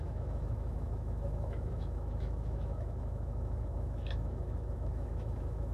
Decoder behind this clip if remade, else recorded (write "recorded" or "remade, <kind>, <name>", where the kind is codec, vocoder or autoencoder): remade, autoencoder, DAC-VAE